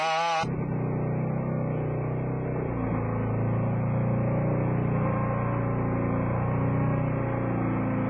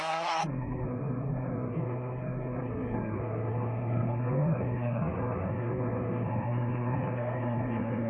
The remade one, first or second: second